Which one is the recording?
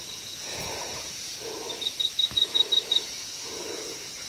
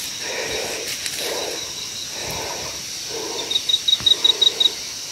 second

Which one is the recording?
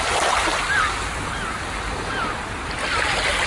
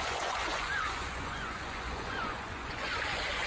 first